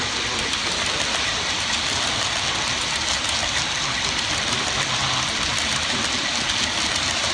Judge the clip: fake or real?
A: real